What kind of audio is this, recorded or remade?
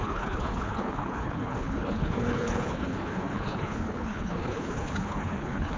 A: remade